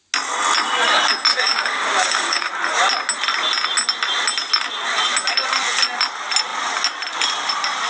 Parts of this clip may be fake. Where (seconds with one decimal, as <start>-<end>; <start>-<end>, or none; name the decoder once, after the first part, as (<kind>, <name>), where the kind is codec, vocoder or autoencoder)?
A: 1.3-2.5 (codec, DAC)